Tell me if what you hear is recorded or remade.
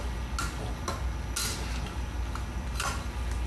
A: recorded